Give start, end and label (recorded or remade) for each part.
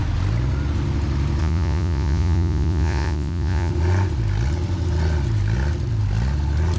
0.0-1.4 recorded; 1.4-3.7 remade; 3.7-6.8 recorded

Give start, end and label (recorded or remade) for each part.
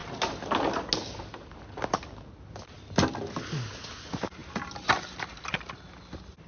0.0-6.5 recorded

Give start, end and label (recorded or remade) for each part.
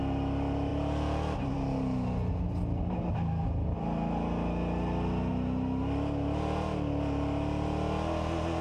0.0-8.6 recorded